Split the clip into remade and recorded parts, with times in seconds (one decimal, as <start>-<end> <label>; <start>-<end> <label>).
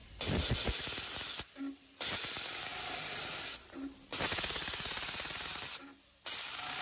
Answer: 0.0-6.8 recorded